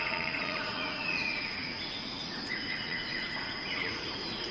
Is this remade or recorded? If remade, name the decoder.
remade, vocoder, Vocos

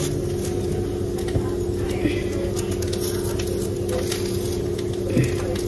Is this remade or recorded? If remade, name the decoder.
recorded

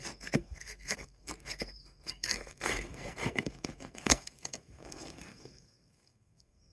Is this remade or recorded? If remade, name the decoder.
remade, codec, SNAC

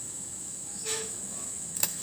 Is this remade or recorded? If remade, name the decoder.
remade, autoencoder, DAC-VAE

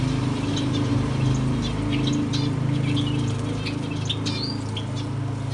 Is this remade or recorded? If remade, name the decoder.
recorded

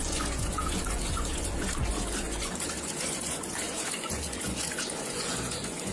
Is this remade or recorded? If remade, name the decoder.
remade, vocoder, Vocos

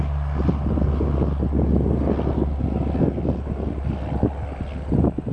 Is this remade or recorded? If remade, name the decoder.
recorded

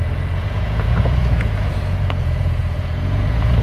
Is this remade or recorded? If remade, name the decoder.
remade, vocoder, Vocos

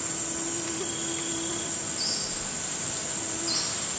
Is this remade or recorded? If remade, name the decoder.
recorded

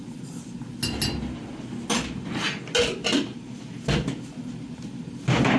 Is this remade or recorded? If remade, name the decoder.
recorded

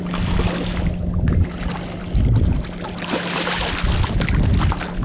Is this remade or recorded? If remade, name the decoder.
recorded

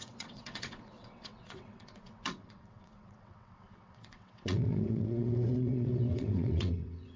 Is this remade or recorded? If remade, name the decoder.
remade, vocoder, WaveNeXt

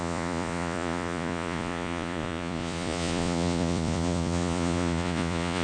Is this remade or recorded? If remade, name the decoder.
remade, vocoder, Vocos